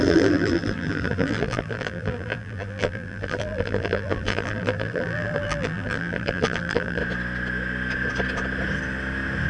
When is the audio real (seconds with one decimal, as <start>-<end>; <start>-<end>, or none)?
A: 7.0-9.5